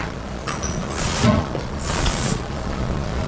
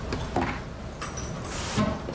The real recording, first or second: second